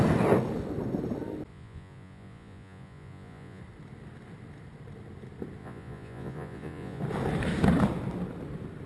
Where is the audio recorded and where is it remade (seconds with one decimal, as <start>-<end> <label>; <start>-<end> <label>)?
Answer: 0.0-1.5 recorded; 1.5-3.6 remade; 3.6-5.6 recorded; 5.6-7.0 remade; 7.0-8.9 recorded